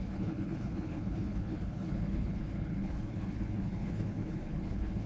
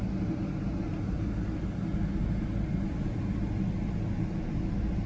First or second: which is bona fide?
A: second